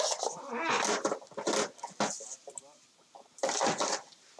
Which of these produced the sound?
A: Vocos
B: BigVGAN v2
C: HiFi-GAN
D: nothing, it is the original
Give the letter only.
D